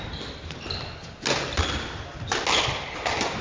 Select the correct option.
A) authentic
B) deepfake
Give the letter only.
A